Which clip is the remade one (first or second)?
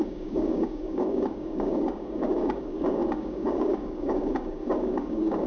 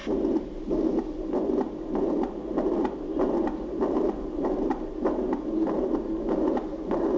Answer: first